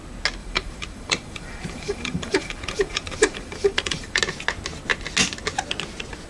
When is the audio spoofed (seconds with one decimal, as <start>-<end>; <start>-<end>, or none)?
0.4-4.2